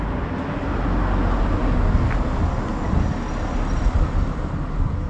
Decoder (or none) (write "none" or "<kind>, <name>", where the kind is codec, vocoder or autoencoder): none